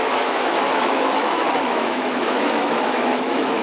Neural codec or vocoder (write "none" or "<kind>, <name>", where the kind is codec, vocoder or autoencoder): autoencoder, DAC-VAE